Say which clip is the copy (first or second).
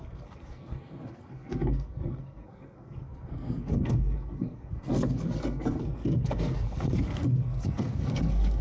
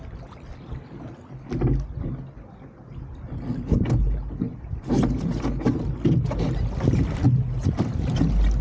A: first